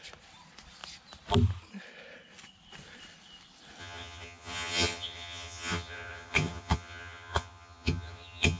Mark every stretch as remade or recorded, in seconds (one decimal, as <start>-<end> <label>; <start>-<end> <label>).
0.0-3.8 recorded; 3.8-8.6 remade